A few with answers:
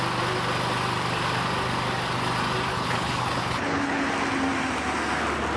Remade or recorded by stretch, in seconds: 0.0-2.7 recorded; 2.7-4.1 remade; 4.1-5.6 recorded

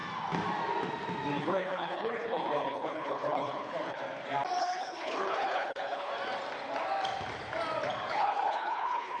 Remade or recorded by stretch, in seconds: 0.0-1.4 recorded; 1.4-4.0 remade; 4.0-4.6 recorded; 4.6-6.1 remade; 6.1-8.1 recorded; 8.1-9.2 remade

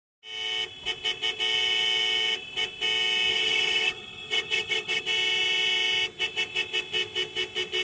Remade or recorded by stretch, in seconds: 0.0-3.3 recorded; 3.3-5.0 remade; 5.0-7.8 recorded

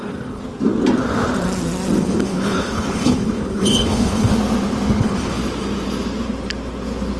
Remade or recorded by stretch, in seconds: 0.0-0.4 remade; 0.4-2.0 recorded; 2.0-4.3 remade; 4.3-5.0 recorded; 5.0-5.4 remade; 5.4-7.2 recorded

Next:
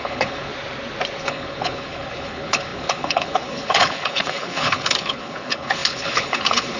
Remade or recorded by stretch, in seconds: 0.0-0.5 remade; 0.5-1.2 recorded; 1.2-6.8 remade

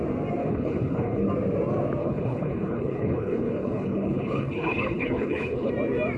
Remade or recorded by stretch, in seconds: 0.0-0.4 recorded; 0.4-1.3 remade; 1.3-2.0 recorded; 2.0-5.7 remade; 5.7-6.2 recorded

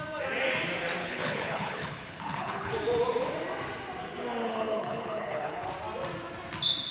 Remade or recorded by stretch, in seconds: 0.0-1.0 recorded; 1.0-2.7 remade; 2.7-4.4 recorded; 4.4-5.7 remade; 5.7-6.9 recorded

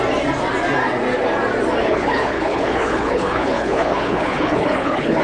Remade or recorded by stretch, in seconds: 0.0-1.8 recorded; 1.8-5.2 remade